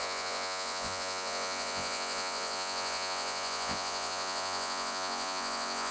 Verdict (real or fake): fake